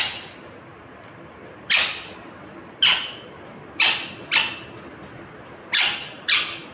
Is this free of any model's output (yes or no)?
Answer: yes